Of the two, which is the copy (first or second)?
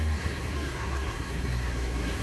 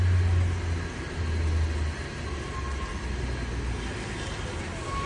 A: first